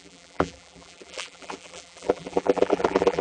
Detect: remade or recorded remade